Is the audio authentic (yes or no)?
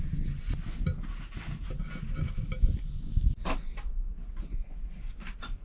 yes